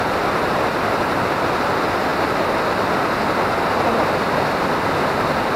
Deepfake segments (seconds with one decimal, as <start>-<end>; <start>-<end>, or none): none